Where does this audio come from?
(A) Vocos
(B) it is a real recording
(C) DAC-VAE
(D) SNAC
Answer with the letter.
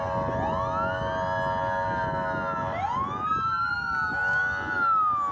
B